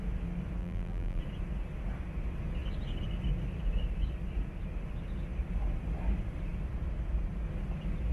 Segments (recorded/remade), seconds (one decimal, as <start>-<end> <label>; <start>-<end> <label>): 0.0-0.6 recorded; 0.6-1.2 remade; 1.2-8.1 recorded